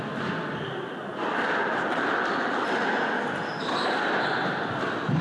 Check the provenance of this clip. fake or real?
real